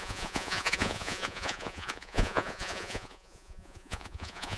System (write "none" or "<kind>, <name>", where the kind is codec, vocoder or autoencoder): vocoder, Vocos